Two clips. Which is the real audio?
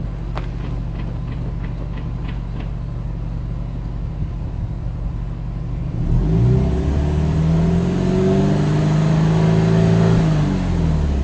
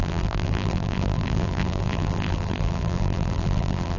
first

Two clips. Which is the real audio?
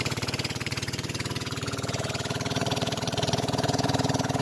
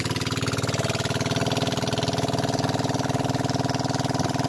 second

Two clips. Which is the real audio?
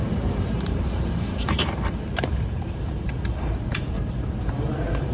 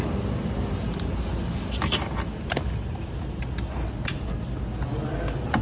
second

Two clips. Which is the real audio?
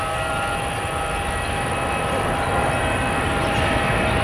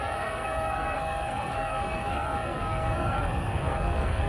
first